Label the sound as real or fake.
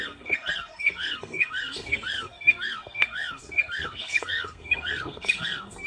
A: fake